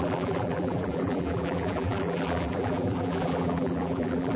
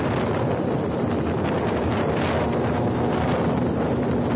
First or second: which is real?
second